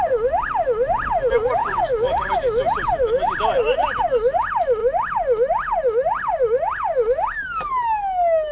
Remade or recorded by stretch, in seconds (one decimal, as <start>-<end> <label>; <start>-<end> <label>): 0.0-1.6 recorded; 1.6-2.3 remade; 2.3-8.5 recorded